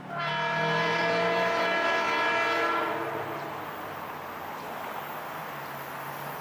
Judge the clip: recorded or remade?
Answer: recorded